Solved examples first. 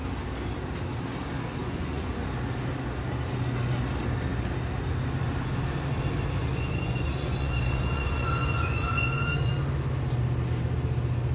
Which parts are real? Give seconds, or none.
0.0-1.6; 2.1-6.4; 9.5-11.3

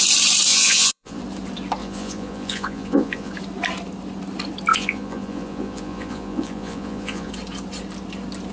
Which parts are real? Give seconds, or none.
0.0-0.5; 1.2-1.8; 3.3-4.7; 7.3-8.5

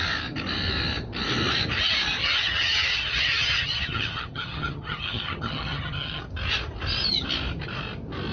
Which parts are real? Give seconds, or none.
0.0-2.2; 6.2-8.3

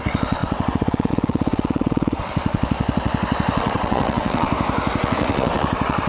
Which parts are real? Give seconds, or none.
4.5-5.0

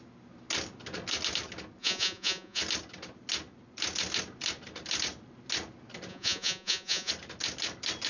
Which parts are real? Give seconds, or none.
0.0-1.8; 2.6-6.1; 7.1-8.1

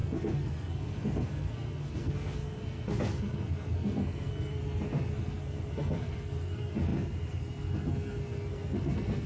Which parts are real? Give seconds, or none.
none

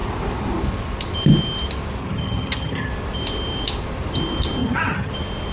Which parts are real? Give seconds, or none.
0.0-2.0; 2.9-4.6; 5.1-5.5

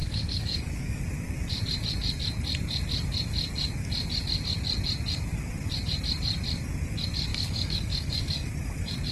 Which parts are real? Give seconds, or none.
1.0-7.3; 8.5-9.1